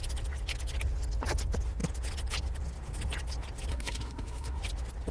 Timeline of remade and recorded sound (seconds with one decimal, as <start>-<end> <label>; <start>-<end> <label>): 0.0-3.7 recorded; 3.7-4.6 remade; 4.6-5.1 recorded